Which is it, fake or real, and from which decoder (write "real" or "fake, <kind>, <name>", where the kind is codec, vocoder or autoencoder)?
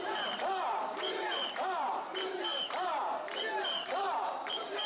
fake, vocoder, BigVGAN v2